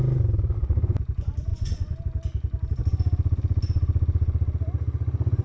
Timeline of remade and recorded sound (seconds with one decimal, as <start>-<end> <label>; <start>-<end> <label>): 0.0-1.5 recorded; 1.5-2.0 remade; 2.0-5.4 recorded